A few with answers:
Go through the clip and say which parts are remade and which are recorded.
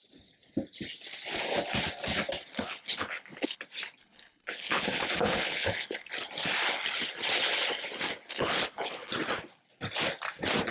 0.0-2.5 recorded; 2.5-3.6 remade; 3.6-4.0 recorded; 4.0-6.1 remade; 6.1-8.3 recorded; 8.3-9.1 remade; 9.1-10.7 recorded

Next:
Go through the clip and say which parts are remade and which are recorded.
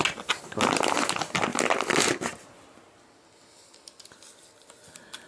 0.0-5.3 recorded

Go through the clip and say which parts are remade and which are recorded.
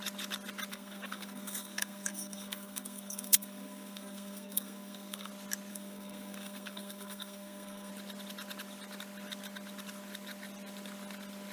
0.0-0.7 recorded; 0.7-5.3 remade; 5.3-5.7 recorded; 5.7-7.9 remade; 7.9-11.5 recorded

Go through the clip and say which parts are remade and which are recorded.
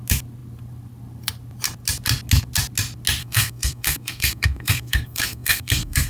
0.0-3.2 recorded; 3.2-6.1 remade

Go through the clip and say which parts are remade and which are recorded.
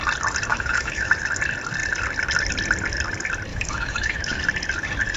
0.0-0.5 recorded; 0.5-1.1 remade; 1.1-3.5 recorded; 3.5-4.4 remade; 4.4-5.2 recorded